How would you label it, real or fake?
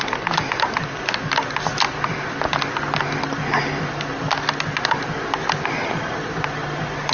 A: real